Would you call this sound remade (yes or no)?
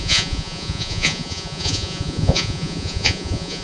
yes